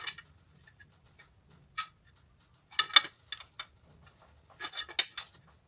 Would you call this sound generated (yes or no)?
no